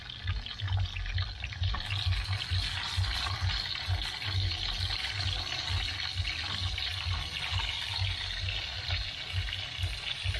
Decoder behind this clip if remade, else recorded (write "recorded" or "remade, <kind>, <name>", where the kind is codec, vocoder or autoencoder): recorded